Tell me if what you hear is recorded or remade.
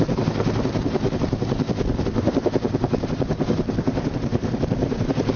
remade